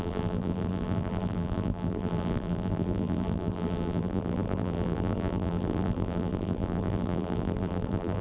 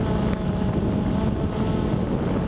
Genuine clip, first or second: second